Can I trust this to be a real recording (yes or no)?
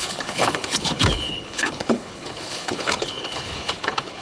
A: no